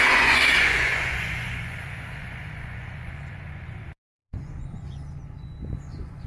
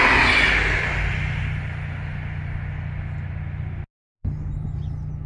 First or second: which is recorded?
second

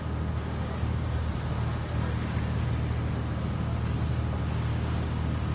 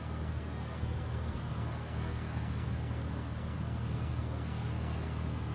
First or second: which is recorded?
first